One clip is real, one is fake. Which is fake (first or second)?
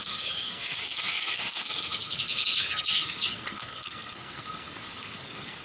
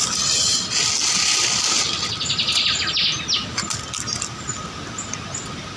first